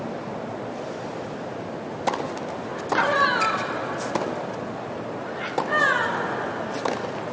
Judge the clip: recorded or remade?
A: recorded